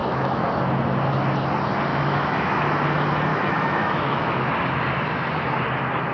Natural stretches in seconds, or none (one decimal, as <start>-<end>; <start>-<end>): 0.5-1.9; 2.6-3.3; 4.5-6.1